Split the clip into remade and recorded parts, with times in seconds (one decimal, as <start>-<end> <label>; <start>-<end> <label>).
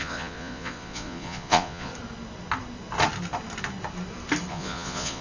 0.0-1.9 remade; 1.9-4.5 recorded; 4.5-5.2 remade